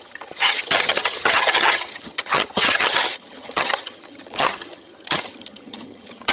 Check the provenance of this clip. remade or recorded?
remade